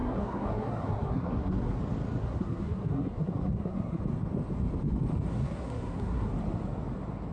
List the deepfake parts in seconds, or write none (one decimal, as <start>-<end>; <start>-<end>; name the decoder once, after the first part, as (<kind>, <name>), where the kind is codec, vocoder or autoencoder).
0.0-1.8 (codec, SNAC); 2.2-4.0; 5.3-6.3